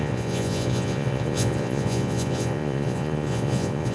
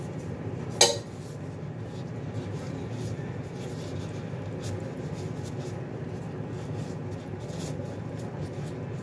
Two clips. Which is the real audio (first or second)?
second